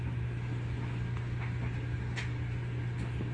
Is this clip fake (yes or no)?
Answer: no